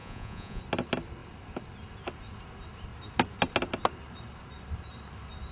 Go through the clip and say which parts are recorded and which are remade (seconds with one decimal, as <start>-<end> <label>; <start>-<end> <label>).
0.0-0.6 remade; 0.6-5.5 recorded